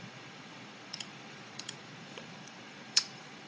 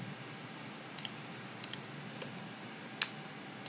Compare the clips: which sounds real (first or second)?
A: second